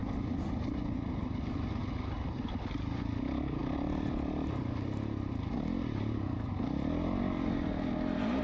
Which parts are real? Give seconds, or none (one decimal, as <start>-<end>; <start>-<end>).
0.0-8.4